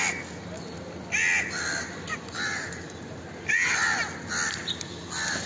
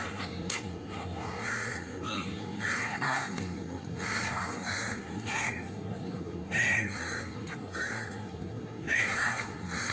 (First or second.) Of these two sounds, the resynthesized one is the second